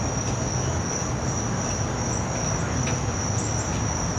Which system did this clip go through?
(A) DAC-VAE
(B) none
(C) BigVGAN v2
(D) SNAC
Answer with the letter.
B